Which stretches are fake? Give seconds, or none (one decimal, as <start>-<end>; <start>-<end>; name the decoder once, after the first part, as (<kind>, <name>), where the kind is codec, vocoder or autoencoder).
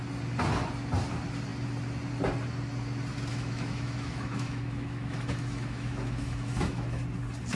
3.3-7.0 (autoencoder, DAC-VAE)